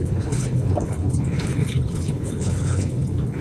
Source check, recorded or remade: remade